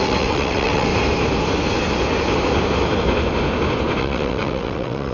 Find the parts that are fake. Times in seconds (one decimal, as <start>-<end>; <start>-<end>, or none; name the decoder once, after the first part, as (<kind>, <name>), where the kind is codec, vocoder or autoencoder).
0.0-0.9 (vocoder, WaveNeXt); 4.0-5.1